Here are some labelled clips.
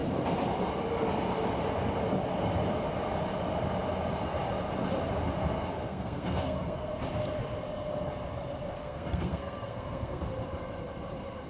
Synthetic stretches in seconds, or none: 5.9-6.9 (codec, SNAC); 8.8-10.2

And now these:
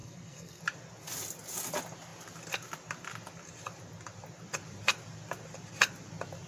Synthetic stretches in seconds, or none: 0.0-0.6 (codec, SNAC)

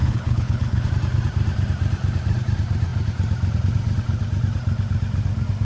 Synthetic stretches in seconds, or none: 0.0-0.9 (codec, HILCodec)

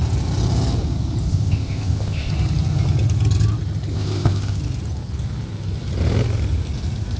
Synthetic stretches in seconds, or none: 1.3-2.3 (codec, ZipCodec); 3.9-4.6

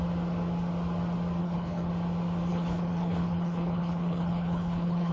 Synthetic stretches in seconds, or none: 1.4-1.9 (codec, HILCodec); 2.5-5.1

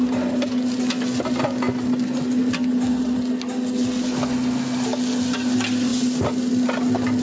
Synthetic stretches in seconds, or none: none

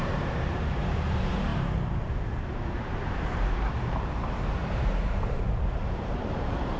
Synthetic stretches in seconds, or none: 0.0-6.8 (vocoder, BigVGAN v2)